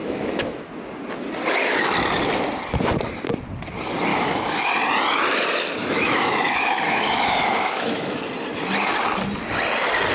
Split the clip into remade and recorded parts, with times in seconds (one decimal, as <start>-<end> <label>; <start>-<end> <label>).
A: 0.0-0.7 remade; 0.7-4.1 recorded; 4.1-4.7 remade; 4.7-5.8 recorded; 5.8-8.2 remade; 8.2-10.1 recorded